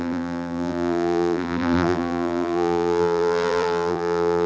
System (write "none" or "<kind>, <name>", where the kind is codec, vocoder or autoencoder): vocoder, BigVGAN v2